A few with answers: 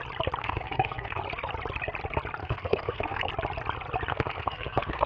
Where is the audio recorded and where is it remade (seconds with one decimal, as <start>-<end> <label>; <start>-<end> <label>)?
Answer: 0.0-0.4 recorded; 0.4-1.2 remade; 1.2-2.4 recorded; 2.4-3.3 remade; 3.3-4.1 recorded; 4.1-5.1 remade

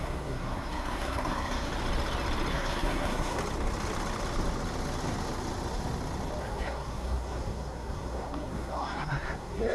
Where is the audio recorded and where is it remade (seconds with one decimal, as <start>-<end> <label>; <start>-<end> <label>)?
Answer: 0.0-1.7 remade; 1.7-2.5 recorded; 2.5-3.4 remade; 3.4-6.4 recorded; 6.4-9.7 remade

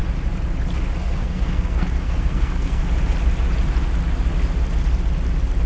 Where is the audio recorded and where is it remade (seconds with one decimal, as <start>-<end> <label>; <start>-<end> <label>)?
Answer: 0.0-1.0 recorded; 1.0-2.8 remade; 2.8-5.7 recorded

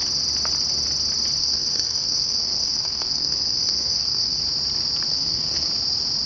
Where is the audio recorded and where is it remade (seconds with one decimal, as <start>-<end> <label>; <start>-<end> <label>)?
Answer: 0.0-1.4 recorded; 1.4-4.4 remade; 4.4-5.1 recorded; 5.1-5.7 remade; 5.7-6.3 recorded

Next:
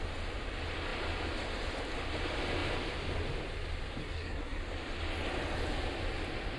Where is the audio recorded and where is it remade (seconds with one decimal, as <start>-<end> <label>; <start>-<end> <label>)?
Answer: 0.0-4.0 recorded; 4.0-4.6 remade; 4.6-6.6 recorded

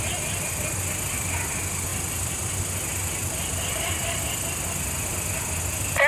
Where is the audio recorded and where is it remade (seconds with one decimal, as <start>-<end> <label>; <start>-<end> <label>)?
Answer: 0.0-6.1 recorded